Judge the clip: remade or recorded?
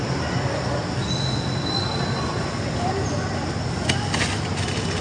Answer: recorded